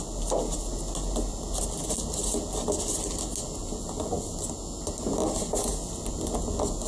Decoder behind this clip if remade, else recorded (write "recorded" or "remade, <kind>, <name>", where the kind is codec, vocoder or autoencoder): recorded